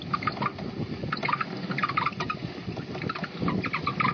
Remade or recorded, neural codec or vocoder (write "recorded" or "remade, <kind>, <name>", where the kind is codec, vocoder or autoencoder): recorded